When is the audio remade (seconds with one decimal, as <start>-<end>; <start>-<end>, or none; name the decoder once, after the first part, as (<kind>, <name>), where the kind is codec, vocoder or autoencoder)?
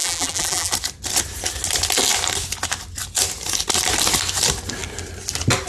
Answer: 0.0-0.7 (vocoder, BigVGAN v2)